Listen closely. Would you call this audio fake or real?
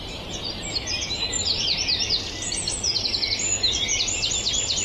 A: real